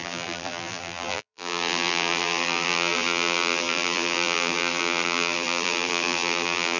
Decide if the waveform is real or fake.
fake